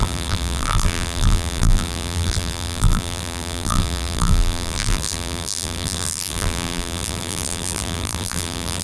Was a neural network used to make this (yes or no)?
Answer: yes